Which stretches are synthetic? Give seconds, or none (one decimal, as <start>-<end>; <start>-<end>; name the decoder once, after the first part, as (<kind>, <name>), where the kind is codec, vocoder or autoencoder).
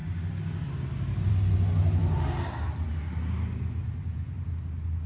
none